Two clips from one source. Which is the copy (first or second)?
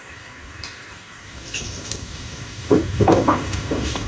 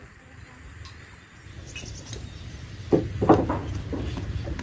first